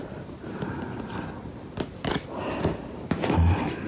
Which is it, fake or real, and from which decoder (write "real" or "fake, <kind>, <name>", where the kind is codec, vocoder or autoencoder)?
real